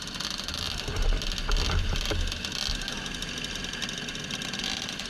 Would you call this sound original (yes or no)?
yes